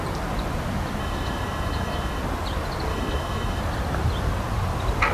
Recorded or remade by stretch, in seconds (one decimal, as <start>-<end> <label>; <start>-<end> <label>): 0.0-1.0 recorded; 1.0-2.2 remade; 2.2-2.9 recorded; 2.9-3.6 remade; 3.6-5.1 recorded